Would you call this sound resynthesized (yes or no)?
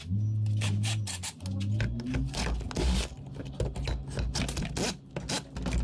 no